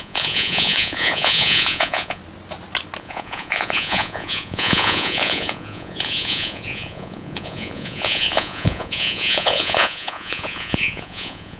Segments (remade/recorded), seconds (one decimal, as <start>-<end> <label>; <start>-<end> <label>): 0.0-2.2 remade; 2.2-3.0 recorded; 3.0-11.6 remade